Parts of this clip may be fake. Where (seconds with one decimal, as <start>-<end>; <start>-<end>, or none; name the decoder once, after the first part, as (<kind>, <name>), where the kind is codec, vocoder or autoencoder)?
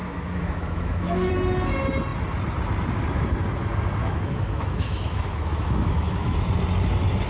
0.0-1.3 (autoencoder, DAC-VAE); 4.0-6.5